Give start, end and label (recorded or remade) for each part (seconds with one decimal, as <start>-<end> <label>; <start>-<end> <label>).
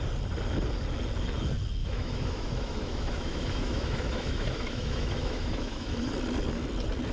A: 0.0-1.8 recorded; 1.8-6.1 remade; 6.1-7.1 recorded